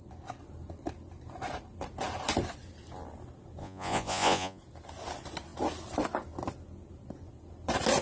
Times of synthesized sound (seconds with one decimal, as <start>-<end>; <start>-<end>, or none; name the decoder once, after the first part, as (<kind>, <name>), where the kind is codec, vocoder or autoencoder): 3.6-4.6 (vocoder, Vocos)